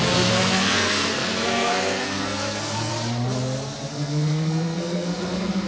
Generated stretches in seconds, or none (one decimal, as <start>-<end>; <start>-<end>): 0.0-2.9; 3.9-5.7